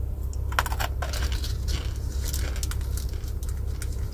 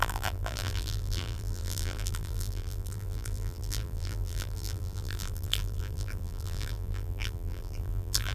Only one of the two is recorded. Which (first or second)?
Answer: first